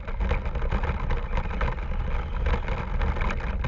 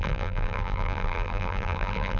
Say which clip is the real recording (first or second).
first